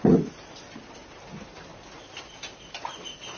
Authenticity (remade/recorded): recorded